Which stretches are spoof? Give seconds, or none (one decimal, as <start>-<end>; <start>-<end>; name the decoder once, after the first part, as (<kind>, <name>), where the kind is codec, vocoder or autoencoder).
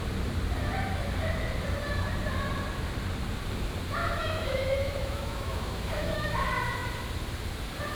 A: 4.0-6.3 (autoencoder, DAC-VAE)